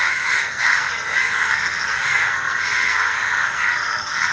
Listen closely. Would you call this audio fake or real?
fake